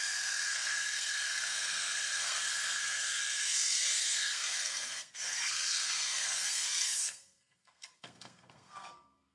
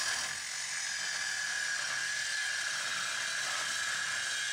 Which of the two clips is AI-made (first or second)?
first